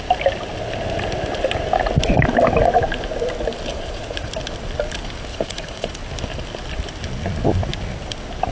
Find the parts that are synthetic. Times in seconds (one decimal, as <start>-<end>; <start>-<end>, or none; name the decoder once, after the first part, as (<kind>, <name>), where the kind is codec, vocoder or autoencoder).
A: 3.7-4.3 (vocoder, Vocos); 5.3-5.9